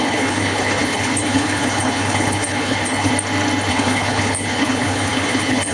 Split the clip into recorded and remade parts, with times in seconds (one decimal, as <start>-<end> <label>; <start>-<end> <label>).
0.0-3.1 remade; 3.1-3.7 recorded; 3.7-5.7 remade